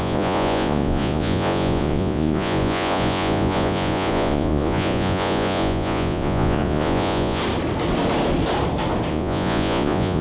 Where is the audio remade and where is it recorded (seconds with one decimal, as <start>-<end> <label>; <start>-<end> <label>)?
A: 0.0-7.4 remade; 7.4-9.1 recorded; 9.1-10.2 remade